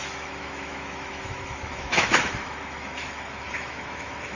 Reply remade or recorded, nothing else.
remade